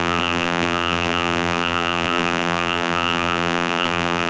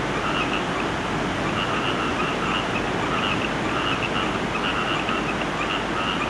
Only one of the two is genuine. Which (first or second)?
second